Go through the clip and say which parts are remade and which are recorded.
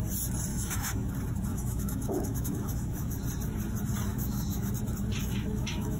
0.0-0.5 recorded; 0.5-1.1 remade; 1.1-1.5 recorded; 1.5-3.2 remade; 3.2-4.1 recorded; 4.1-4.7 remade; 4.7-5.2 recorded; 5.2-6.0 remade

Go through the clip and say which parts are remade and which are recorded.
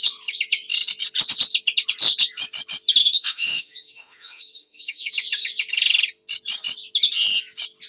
0.0-3.0 recorded; 3.0-5.1 remade; 5.1-7.9 recorded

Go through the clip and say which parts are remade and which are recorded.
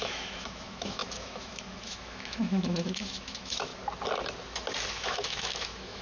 0.0-3.7 remade; 3.7-4.9 recorded; 4.9-6.0 remade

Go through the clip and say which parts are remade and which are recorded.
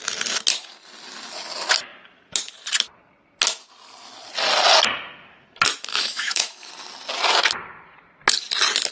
0.0-5.9 recorded; 5.9-6.7 remade; 6.7-8.9 recorded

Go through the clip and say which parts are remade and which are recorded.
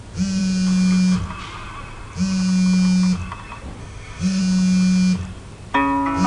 0.0-3.8 recorded; 3.8-4.4 remade; 4.4-6.3 recorded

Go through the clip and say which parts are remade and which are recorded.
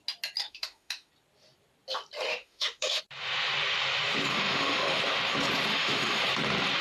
0.0-0.4 recorded; 0.4-1.1 remade; 1.1-2.3 recorded; 2.3-3.0 remade; 3.0-4.3 recorded; 4.3-5.0 remade; 5.0-5.7 recorded; 5.7-6.2 remade; 6.2-6.8 recorded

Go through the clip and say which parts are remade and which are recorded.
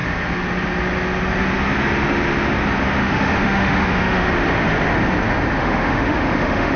0.0-3.0 recorded; 3.0-4.3 remade; 4.3-5.6 recorded; 5.6-6.8 remade